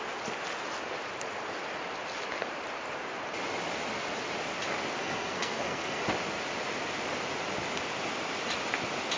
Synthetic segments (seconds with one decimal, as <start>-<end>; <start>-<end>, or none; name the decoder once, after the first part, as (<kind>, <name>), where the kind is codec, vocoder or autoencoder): 5.0-6.0 (codec, SNAC)